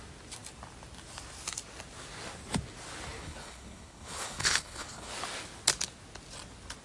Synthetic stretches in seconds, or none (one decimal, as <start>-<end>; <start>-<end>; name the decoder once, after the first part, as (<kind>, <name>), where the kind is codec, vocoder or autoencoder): 3.2-5.1 (codec, HILCodec)